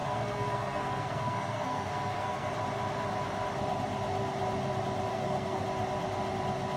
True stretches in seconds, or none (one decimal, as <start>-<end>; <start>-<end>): 2.5-5.1; 5.6-6.8